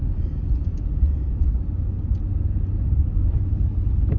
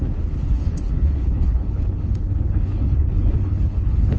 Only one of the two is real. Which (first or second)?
first